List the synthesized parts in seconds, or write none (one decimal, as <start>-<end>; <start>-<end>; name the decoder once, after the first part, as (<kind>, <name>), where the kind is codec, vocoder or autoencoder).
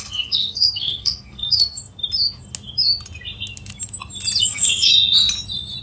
0.0-1.8 (codec, SNAC); 4.4-4.9